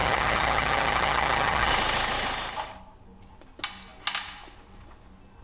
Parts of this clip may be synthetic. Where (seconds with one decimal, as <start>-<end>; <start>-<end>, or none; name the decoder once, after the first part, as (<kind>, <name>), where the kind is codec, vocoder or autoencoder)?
0.0-1.7 (vocoder, HiFi-GAN)